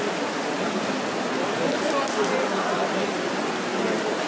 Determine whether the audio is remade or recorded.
recorded